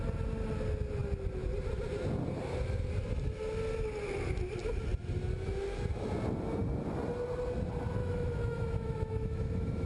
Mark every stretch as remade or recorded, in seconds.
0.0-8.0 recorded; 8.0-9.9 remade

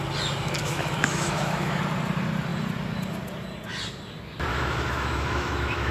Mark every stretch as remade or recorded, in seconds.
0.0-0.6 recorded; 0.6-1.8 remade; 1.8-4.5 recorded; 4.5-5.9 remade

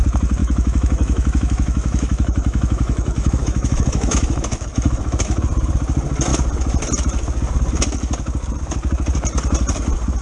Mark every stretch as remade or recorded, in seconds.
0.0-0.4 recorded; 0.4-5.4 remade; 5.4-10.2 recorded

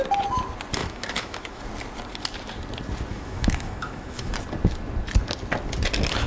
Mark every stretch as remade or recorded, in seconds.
0.0-0.8 recorded; 0.8-1.6 remade; 1.6-3.1 recorded; 3.1-4.3 remade; 4.3-6.3 recorded